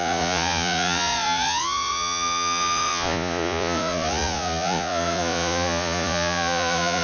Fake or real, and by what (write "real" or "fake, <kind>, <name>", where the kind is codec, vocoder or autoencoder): fake, vocoder, Vocos